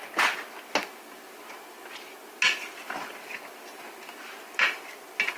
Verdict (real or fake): real